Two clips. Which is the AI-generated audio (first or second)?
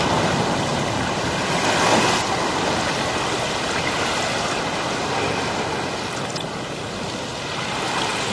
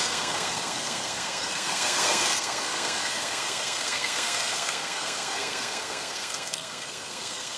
second